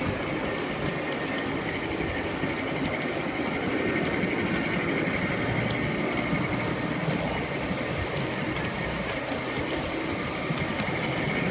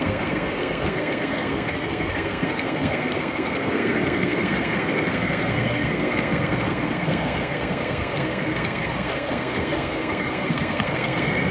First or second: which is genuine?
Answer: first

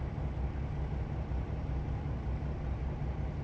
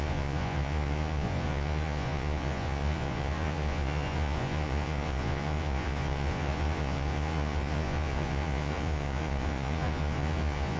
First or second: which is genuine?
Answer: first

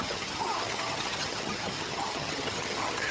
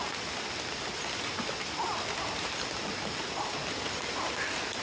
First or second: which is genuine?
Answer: second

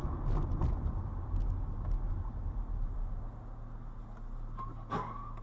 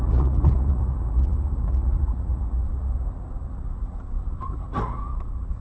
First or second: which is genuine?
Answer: first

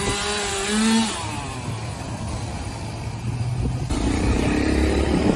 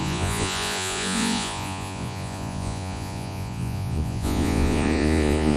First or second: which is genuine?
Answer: first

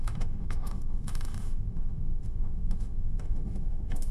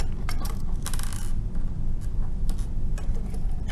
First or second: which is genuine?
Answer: second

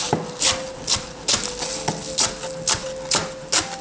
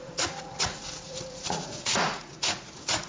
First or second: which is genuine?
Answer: first